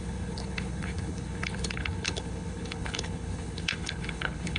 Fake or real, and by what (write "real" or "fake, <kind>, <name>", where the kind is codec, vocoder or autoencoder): fake, codec, HILCodec